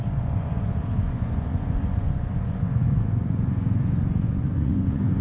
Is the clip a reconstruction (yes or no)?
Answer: yes